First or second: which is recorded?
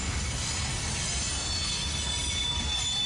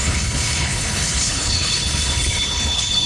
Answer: first